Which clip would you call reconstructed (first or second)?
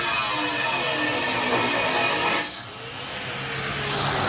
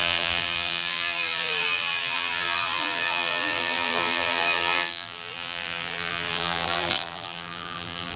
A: second